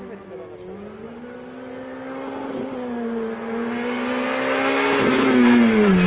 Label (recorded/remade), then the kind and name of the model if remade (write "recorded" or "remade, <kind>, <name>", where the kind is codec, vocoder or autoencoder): recorded